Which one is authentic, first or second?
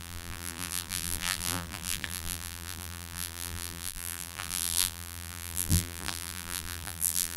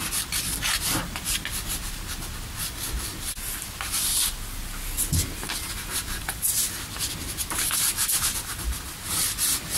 second